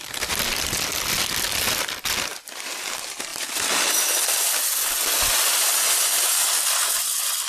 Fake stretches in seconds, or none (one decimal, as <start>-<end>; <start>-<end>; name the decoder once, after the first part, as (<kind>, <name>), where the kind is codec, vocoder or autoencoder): none